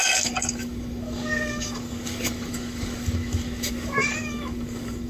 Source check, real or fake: fake